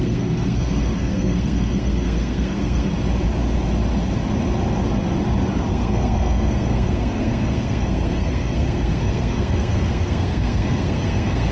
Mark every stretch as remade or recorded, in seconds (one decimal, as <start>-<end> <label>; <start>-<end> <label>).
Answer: 0.0-2.9 remade; 2.9-5.7 recorded; 5.7-11.5 remade